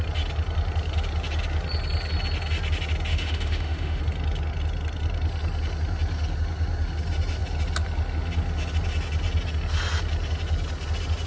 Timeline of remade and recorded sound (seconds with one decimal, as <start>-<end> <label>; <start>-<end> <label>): 0.0-3.1 recorded; 3.1-4.0 remade; 4.0-11.3 recorded